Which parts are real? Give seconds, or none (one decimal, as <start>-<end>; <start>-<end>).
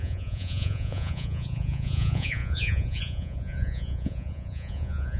none